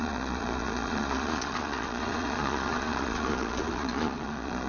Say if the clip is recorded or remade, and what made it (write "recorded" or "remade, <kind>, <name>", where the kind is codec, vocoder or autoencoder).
remade, vocoder, Vocos